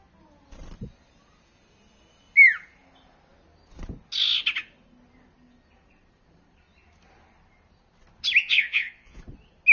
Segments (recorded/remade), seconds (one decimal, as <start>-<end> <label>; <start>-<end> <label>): 0.0-8.4 recorded; 8.4-9.2 remade; 9.2-9.7 recorded